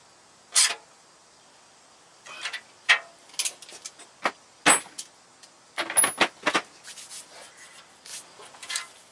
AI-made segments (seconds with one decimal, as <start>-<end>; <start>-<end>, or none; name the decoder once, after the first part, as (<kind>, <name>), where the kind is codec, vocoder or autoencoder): none